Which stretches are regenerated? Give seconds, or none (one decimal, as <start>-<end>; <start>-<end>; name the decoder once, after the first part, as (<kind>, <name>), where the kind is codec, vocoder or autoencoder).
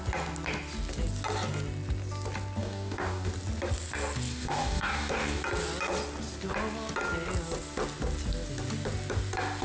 2.6-3.3 (codec, DAC); 4.3-5.4